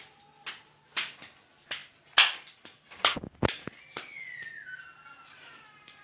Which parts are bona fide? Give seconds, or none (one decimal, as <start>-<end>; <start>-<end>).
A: 0.0-6.0